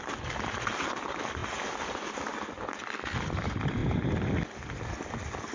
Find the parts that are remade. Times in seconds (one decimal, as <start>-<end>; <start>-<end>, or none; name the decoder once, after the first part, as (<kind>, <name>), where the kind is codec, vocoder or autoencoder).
none